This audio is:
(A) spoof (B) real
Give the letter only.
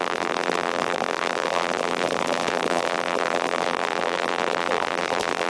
A